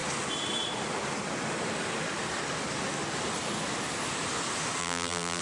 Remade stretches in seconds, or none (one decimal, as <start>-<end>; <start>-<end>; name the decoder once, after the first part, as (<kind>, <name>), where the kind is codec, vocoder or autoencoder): 4.8-5.4 (vocoder, BigVGAN v2)